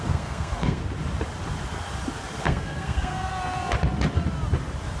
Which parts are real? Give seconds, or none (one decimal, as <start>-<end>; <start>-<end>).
0.8-2.4; 3.3-5.0